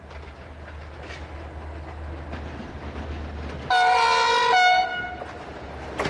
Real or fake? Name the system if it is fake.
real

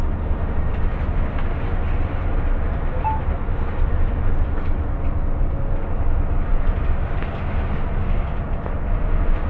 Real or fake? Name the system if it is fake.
real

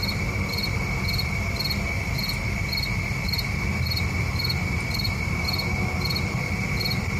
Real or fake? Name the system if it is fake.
real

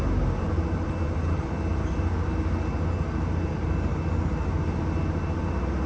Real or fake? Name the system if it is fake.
real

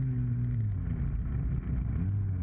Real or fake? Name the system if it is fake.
real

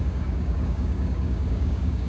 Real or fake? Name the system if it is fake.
fake, codec, DAC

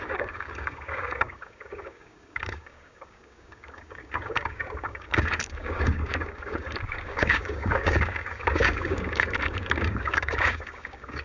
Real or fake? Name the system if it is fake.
fake, codec, DAC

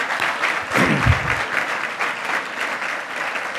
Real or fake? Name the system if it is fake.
real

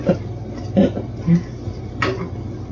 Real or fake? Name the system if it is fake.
real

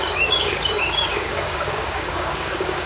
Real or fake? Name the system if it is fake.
fake, codec, DAC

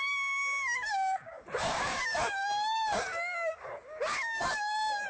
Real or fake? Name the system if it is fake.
fake, codec, DAC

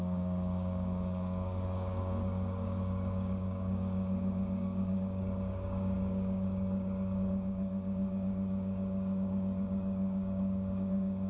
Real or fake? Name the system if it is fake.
fake, codec, DAC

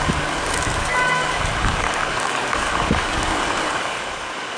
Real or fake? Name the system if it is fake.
fake, codec, DAC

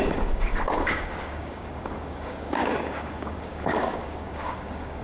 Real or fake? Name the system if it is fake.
fake, codec, DAC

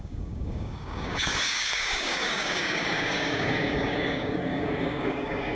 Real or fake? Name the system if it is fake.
fake, codec, DAC